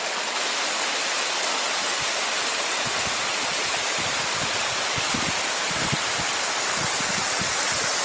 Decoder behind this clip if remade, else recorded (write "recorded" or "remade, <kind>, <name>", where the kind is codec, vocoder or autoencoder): recorded